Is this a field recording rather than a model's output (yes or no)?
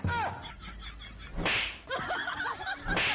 yes